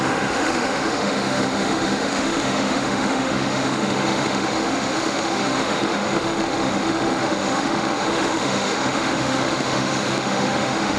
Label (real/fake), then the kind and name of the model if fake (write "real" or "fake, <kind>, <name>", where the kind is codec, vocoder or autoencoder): fake, autoencoder, DAC-VAE